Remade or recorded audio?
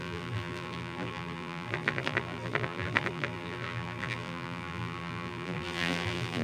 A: remade